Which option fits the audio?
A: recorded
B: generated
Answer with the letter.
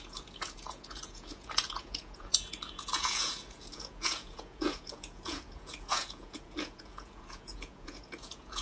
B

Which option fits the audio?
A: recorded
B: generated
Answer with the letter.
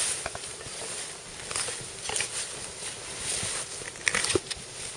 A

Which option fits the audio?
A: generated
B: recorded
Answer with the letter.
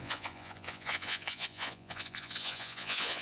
A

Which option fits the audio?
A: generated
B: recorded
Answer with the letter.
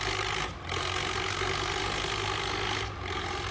B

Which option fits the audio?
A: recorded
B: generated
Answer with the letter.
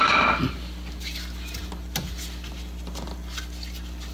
A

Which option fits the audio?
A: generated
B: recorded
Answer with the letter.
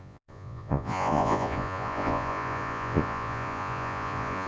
A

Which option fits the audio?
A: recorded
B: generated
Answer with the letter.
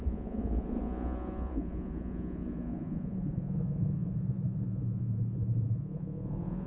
B